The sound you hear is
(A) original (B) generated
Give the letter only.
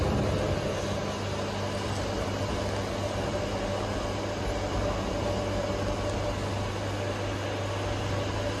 A